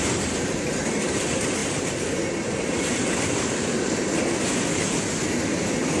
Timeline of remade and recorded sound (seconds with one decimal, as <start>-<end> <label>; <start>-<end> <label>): 0.0-6.0 recorded